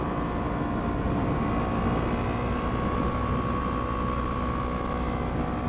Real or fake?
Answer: real